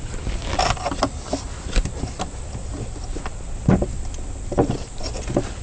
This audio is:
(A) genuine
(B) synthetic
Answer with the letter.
A